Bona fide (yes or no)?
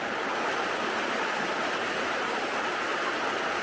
yes